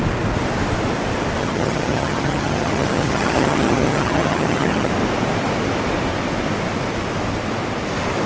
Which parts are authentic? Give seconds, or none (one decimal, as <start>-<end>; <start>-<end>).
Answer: 0.0-1.4; 4.9-8.3

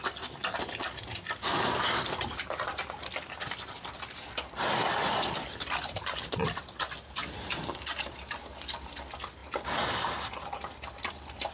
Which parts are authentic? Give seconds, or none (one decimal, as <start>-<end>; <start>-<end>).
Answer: 0.0-11.5

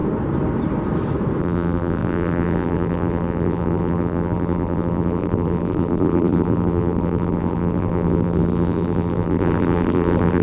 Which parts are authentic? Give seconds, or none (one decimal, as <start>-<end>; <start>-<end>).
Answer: 0.0-1.4

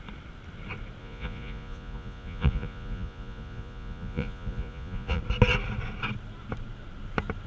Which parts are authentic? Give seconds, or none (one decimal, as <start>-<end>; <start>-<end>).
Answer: 0.0-1.0; 5.2-7.5

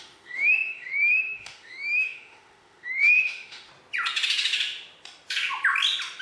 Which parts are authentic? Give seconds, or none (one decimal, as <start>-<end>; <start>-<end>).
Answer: 3.7-6.2

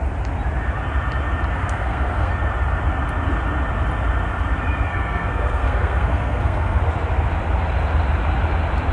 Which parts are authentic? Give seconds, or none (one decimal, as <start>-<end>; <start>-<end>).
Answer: 0.0-1.5; 2.3-4.9; 6.8-8.9